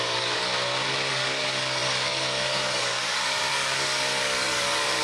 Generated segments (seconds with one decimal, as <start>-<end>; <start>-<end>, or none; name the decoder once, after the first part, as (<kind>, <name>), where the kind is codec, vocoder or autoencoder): 0.0-0.5 (codec, DAC); 1.1-5.0